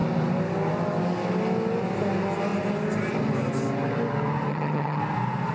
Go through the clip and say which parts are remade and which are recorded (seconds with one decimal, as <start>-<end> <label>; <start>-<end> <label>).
0.0-4.5 recorded; 4.5-5.0 remade; 5.0-5.5 recorded